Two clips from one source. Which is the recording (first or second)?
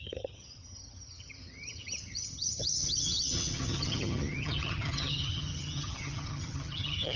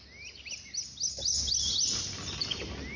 second